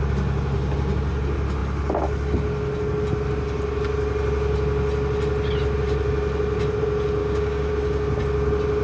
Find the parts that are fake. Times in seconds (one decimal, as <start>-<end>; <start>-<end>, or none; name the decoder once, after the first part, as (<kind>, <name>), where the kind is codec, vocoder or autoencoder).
7.2-7.7 (codec, DAC)